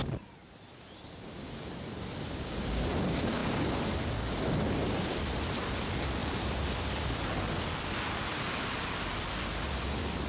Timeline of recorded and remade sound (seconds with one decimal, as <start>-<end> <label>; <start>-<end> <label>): 0.0-6.2 recorded; 6.2-7.5 remade; 7.5-10.3 recorded